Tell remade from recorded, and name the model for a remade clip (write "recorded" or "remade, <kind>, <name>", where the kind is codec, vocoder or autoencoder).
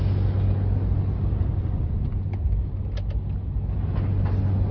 recorded